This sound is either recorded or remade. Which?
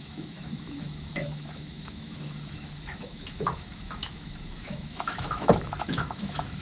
remade